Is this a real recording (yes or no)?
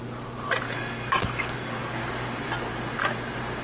yes